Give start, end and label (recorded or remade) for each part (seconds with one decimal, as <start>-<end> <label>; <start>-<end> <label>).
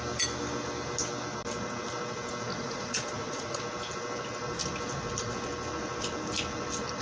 0.0-2.5 recorded; 2.5-3.6 remade; 3.6-7.0 recorded